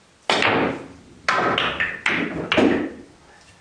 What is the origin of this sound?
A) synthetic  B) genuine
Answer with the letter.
B